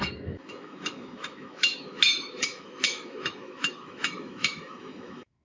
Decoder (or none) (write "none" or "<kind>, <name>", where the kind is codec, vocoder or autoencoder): autoencoder, DAC-VAE